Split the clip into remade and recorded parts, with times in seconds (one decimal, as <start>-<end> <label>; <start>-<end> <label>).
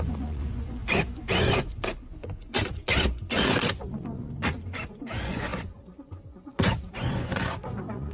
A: 0.0-8.1 remade